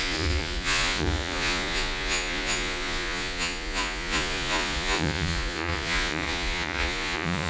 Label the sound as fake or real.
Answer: fake